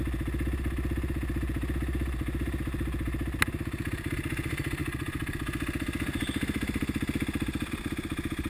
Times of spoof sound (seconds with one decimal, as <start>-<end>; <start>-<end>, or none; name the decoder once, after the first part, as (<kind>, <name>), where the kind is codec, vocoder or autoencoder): none